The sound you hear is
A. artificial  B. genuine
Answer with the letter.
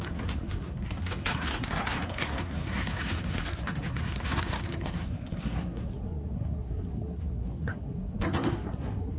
A